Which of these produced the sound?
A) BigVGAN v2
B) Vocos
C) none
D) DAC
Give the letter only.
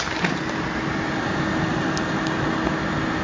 C